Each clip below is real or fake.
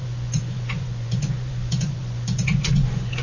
fake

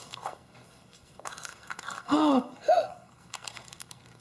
fake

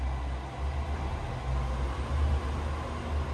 real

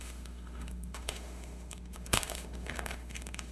fake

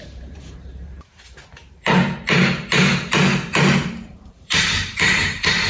fake